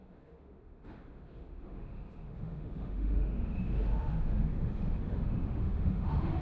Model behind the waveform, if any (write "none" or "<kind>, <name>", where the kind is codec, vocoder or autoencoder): autoencoder, DAC-VAE